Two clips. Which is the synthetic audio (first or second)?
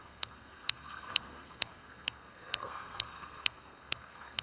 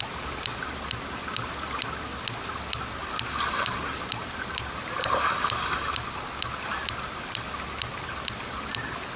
first